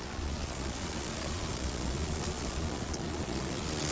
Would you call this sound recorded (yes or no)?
no